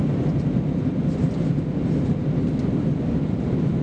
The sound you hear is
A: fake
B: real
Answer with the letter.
B